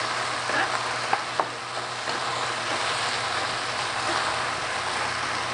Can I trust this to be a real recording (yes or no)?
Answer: yes